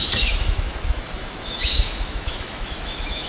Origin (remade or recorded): remade